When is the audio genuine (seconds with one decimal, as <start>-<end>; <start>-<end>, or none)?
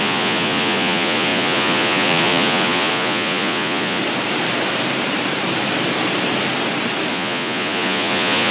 4.0-7.1